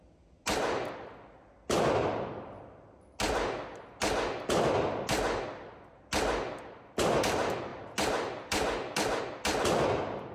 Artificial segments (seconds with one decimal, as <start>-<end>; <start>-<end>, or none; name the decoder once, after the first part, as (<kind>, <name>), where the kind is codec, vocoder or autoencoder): none